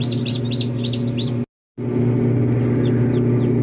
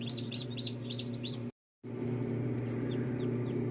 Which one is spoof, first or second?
second